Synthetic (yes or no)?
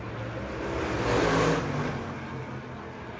no